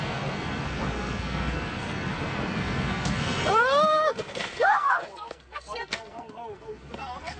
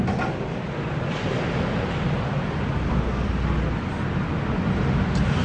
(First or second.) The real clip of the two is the second